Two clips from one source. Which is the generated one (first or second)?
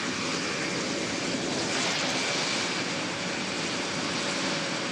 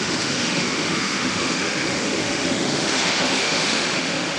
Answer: second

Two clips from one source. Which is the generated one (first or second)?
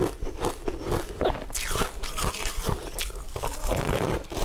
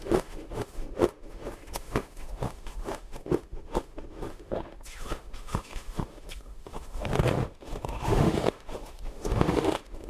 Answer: second